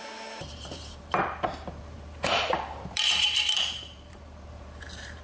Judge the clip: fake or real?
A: fake